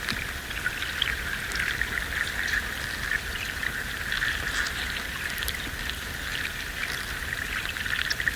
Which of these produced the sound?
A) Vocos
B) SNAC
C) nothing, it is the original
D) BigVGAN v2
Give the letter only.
C